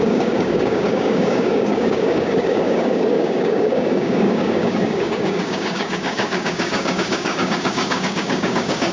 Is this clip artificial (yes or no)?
yes